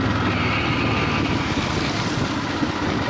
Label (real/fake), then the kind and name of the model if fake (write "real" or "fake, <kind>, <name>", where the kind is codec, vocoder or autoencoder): real